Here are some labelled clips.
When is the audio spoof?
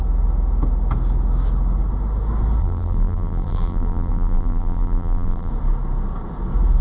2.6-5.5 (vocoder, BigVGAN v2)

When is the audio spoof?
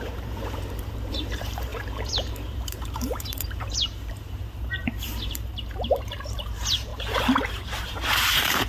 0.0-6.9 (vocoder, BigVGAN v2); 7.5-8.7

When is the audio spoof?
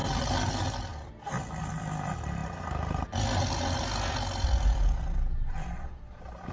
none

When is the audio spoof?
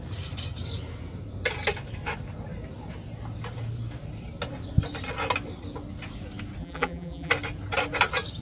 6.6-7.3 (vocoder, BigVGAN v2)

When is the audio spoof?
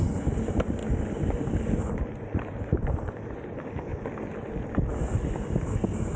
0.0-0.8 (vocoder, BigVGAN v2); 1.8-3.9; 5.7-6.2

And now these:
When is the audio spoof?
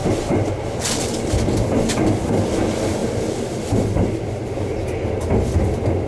0.0-1.3 (vocoder, BigVGAN v2); 3.0-4.2